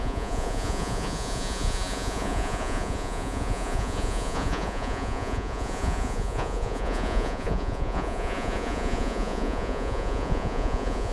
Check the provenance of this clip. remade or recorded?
remade